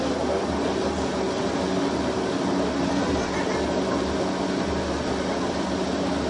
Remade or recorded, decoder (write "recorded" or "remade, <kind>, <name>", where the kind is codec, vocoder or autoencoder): recorded